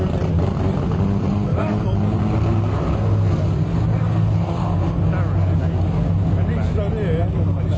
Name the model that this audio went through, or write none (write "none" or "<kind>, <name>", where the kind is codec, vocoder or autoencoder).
none